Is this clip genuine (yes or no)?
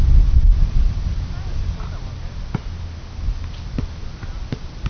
yes